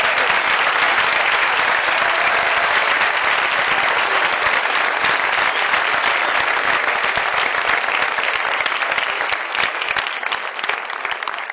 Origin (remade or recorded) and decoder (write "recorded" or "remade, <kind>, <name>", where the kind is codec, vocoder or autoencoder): recorded